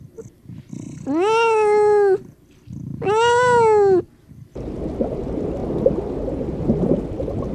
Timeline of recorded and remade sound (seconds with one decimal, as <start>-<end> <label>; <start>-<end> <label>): 0.0-7.5 recorded

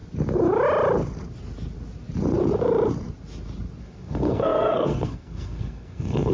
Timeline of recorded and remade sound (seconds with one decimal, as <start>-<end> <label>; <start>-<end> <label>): 0.0-3.8 recorded; 3.8-6.3 remade

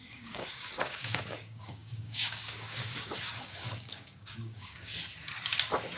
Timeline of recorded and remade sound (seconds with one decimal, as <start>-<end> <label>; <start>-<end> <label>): 0.0-4.9 remade; 4.9-6.0 recorded